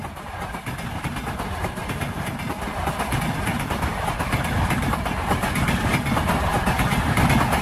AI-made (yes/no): no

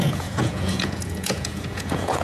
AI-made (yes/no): yes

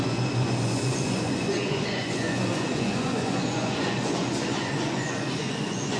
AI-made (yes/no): yes